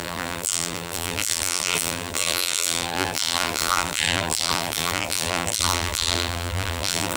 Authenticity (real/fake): fake